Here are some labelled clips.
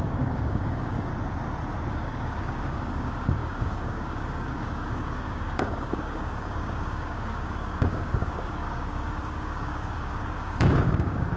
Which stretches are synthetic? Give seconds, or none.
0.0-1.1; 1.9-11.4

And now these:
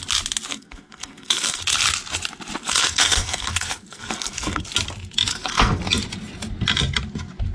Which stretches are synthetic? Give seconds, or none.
0.5-1.6; 2.6-4.6; 5.3-5.8

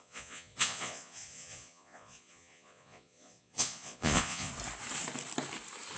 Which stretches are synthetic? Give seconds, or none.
0.0-4.5

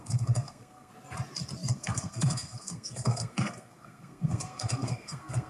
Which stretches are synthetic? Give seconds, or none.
0.0-0.9; 1.7-5.5

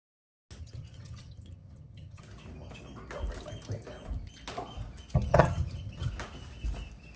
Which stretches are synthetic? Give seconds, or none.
0.6-2.2; 5.3-6.1

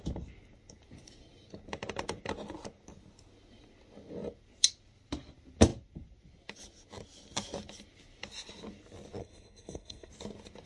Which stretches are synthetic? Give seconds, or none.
9.2-10.1

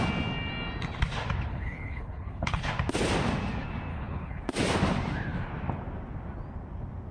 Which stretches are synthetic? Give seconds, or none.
1.5-2.7; 3.9-4.4